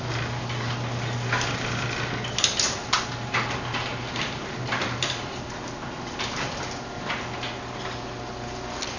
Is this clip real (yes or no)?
yes